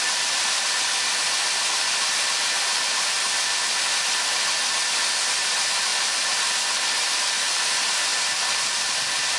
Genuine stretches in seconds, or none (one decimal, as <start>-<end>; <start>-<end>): 0.0-9.4

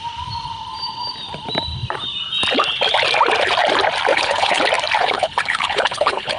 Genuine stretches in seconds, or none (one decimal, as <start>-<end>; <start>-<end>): 0.0-4.1; 4.6-5.0

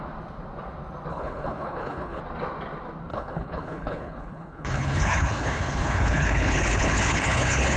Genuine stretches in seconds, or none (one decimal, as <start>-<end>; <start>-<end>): 0.0-1.1; 2.2-3.1

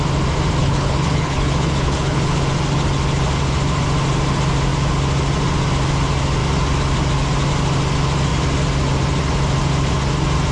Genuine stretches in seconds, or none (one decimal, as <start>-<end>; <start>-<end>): 0.0-0.6; 2.4-10.5

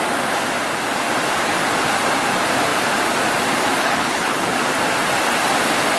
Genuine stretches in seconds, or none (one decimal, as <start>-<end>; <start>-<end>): 0.0-3.8; 4.6-6.0

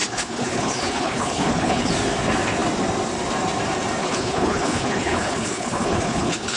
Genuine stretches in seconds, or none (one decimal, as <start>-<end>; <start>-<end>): 1.9-4.0

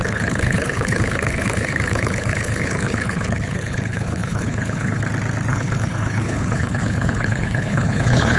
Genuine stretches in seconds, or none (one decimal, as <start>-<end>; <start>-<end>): 5.0-5.5